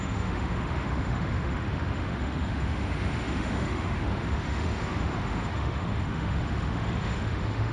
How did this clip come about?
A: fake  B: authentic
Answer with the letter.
A